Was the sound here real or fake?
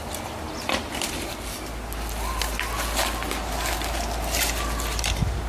real